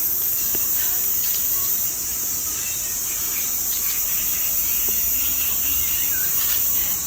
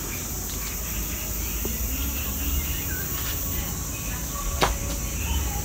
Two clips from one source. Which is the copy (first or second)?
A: first